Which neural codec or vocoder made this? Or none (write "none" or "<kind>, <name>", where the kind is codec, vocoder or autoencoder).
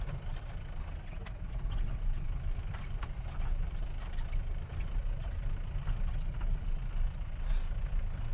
none